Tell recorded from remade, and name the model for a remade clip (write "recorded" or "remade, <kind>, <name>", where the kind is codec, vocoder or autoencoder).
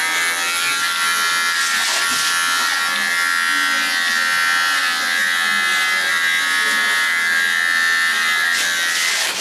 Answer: recorded